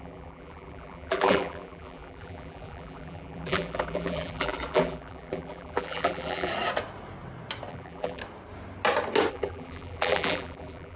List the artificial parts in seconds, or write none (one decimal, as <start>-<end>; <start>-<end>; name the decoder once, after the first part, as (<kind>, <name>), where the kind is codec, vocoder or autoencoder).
0.0-6.5 (vocoder, BigVGAN v2); 7.7-8.2; 9.3-11.0